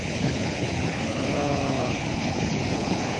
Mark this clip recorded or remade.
remade